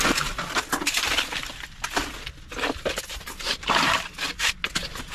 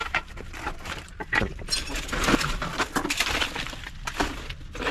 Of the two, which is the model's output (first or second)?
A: second